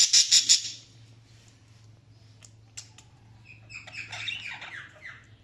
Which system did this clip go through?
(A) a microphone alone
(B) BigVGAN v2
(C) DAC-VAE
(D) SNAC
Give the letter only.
A